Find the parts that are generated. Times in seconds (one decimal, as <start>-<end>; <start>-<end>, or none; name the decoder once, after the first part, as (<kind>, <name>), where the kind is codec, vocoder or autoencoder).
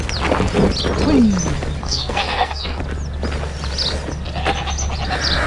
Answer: 1.8-2.8 (codec, SNAC)